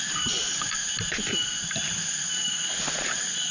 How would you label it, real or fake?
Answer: real